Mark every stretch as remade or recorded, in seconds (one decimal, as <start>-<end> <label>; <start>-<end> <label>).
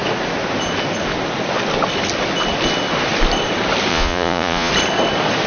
0.0-3.9 recorded; 3.9-4.7 remade; 4.7-5.5 recorded